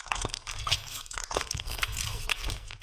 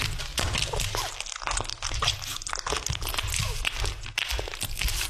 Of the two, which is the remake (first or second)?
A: first